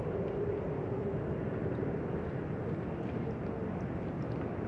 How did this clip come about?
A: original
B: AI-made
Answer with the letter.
A